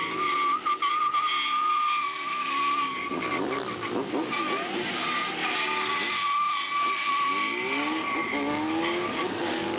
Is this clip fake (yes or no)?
no